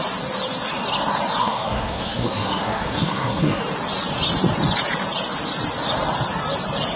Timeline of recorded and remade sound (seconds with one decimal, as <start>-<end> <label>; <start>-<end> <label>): 0.0-1.4 recorded; 1.4-3.6 remade; 3.6-7.0 recorded